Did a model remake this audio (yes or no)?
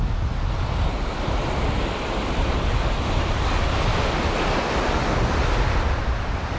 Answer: no